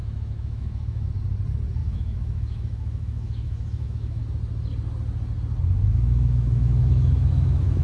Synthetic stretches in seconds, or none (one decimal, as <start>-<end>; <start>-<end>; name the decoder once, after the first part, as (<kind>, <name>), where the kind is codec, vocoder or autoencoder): 0.0-1.1 (autoencoder, DAC-VAE); 1.8-4.2; 5.8-7.8

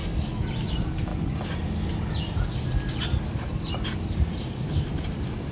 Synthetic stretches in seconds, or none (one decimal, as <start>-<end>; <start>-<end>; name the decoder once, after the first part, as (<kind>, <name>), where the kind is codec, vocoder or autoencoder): 0.7-1.1 (vocoder, BigVGAN v2); 3.3-5.5

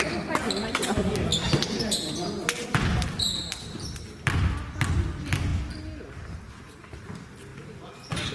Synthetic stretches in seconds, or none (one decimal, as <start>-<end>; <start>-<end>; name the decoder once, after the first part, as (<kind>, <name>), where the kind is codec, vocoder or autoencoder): none